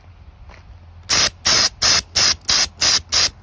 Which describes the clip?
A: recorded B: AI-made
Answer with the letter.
A